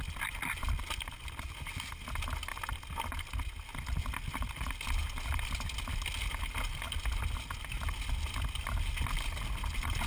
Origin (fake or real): real